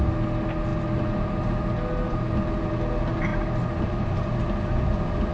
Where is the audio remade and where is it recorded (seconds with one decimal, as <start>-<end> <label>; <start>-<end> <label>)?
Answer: 0.0-5.3 recorded